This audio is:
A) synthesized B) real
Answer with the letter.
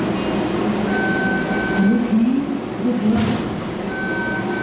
B